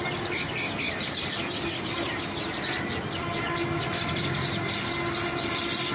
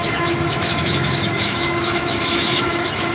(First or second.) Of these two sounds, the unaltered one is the first